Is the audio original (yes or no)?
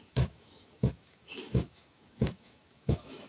no